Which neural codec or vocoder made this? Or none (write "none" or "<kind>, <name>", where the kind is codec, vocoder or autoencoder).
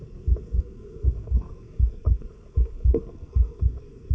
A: codec, SNAC